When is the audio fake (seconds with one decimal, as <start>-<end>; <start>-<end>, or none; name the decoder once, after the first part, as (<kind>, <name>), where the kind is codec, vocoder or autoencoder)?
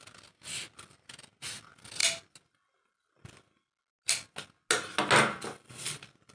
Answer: none